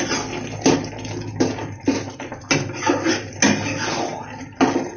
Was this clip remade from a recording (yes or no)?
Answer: no